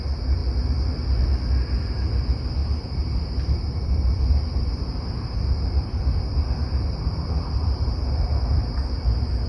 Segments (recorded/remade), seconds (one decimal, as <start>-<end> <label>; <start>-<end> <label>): 0.0-0.4 remade; 0.4-1.6 recorded; 1.6-9.5 remade

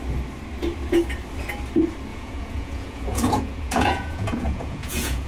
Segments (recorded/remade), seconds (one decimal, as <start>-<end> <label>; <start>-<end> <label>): 0.0-2.1 recorded; 2.1-5.3 remade

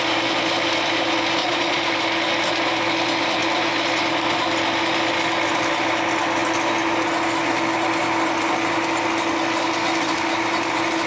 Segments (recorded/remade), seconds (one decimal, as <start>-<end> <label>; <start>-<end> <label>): 0.0-1.4 recorded; 1.4-1.9 remade; 1.9-11.1 recorded

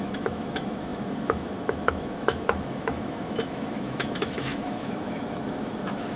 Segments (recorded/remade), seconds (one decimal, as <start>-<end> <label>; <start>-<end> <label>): 0.0-6.2 remade

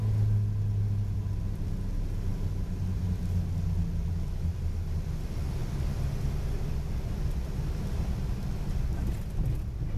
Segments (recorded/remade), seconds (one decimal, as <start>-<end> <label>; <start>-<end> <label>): 0.0-10.0 recorded

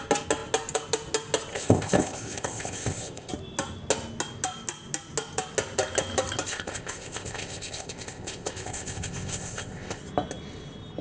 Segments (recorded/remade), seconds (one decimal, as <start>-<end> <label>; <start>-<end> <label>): 0.0-1.5 recorded; 1.5-3.3 remade; 3.3-6.5 recorded; 6.5-10.0 remade; 10.0-11.0 recorded